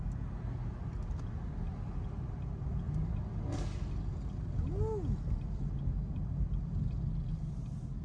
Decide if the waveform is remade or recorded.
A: recorded